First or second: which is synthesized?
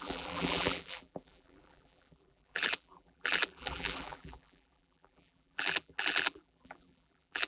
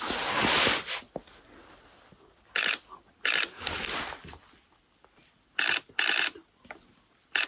first